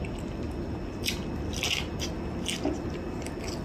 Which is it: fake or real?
real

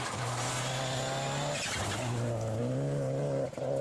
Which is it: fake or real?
real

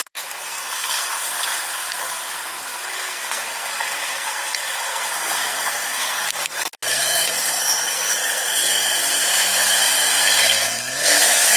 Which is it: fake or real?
fake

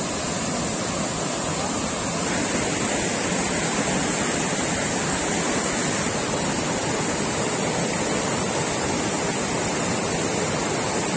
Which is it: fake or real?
real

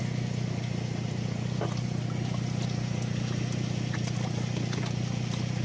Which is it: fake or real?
real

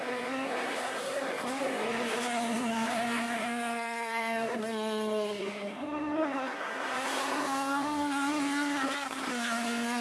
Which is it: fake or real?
fake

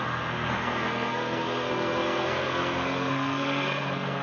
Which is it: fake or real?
fake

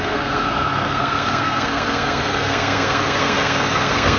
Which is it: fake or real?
fake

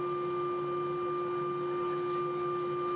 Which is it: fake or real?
real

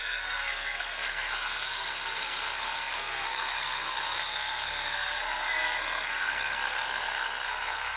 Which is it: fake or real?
fake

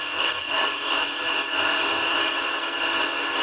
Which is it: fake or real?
fake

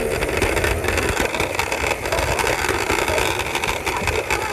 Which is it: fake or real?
real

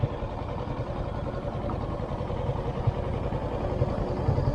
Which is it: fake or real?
real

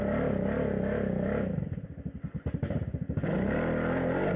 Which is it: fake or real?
real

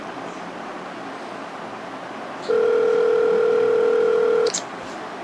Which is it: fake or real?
real